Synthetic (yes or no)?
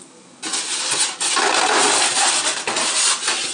no